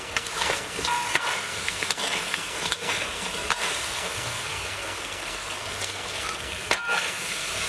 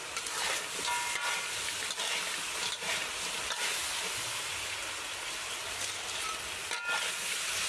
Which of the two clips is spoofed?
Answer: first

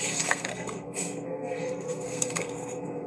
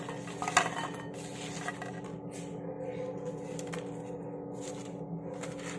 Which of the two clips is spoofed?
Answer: first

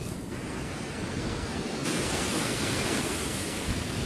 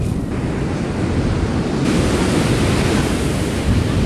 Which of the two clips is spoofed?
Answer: first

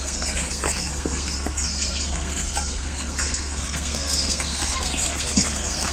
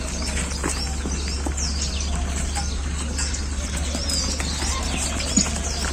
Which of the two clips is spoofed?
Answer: first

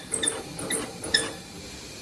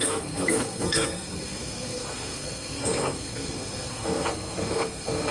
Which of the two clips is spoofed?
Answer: second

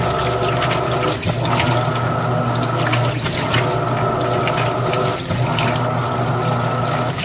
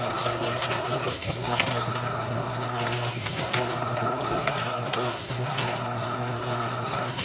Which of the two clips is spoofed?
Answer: second